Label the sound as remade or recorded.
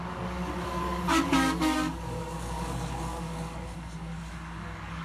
remade